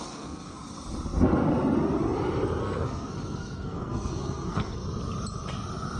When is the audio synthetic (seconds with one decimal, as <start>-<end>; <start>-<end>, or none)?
0.0-0.6; 2.6-4.8